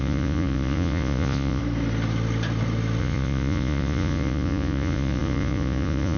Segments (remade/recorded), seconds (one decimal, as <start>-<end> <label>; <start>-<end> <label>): 0.0-1.6 remade; 1.6-3.0 recorded; 3.0-6.2 remade